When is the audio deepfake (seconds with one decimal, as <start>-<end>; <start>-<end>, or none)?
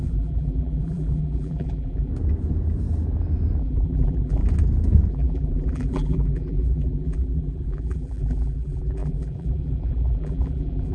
0.0-2.1; 3.6-4.4; 5.1-10.9